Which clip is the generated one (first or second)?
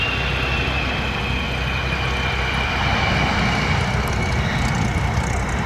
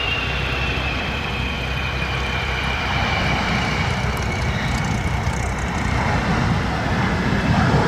second